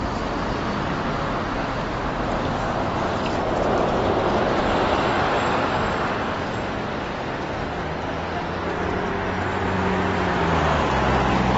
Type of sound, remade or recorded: recorded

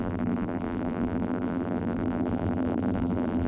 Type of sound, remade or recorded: remade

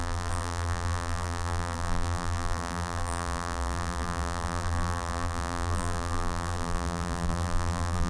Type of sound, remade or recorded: remade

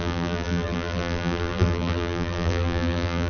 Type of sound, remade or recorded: remade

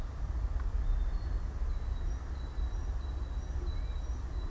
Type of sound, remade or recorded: recorded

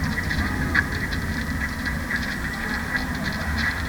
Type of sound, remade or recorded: recorded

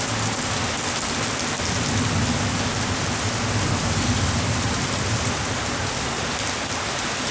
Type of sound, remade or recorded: recorded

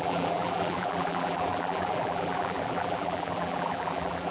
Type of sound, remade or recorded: remade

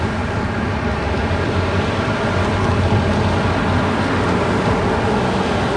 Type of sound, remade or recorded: recorded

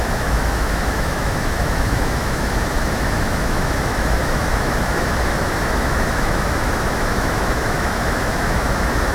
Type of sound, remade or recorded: remade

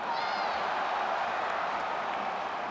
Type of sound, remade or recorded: recorded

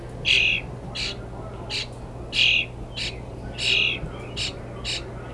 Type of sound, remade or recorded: recorded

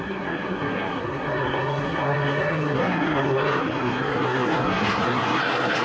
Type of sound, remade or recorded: remade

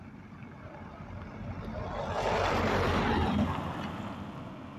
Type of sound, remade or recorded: recorded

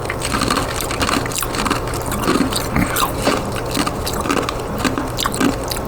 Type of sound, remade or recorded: recorded